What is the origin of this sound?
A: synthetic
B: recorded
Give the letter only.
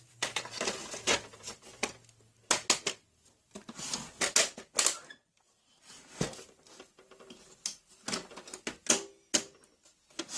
B